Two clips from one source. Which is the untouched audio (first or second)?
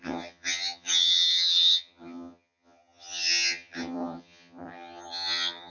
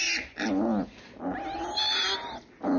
second